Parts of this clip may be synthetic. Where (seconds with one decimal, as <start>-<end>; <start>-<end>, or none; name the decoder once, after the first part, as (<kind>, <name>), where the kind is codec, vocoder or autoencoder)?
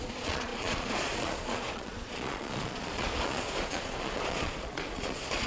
0.0-5.5 (vocoder, Vocos)